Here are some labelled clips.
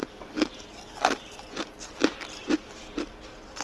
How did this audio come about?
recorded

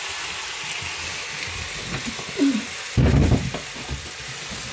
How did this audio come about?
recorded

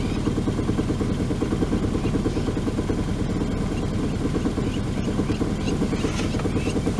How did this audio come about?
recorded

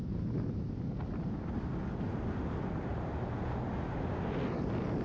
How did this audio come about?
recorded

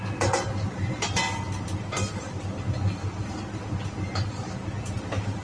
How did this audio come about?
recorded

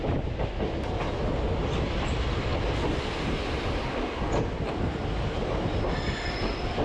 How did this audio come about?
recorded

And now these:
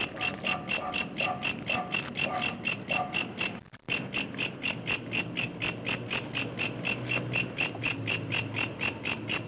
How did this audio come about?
recorded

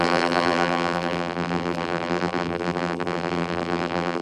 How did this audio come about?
remade